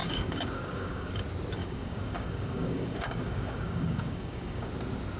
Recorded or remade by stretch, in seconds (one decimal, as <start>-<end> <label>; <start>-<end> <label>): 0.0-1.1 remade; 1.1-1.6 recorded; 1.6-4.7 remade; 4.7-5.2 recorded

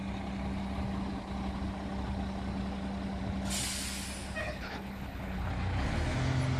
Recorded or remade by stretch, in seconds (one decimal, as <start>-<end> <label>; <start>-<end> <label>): 0.0-4.4 recorded; 4.4-5.5 remade; 5.5-6.6 recorded

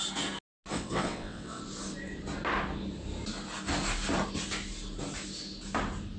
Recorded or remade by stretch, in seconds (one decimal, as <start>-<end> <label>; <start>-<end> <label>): 0.0-0.7 recorded; 0.7-1.6 remade; 1.6-6.2 recorded